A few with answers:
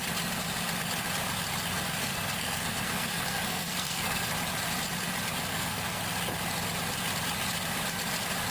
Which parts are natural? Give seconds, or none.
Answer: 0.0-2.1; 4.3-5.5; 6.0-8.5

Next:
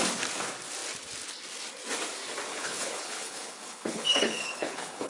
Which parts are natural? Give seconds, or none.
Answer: 0.0-2.5

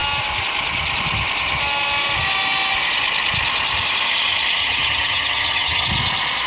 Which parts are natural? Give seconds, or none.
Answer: 0.0-4.6; 5.8-6.5

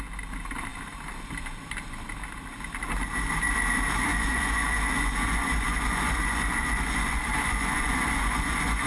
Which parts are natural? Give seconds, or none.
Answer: 0.0-4.1